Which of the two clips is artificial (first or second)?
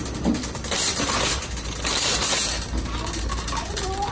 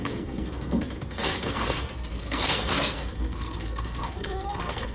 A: second